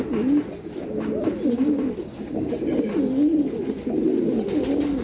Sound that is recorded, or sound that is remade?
recorded